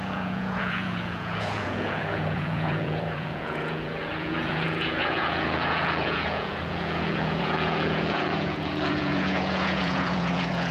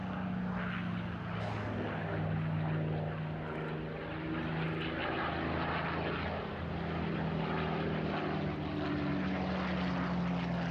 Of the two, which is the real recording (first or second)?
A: second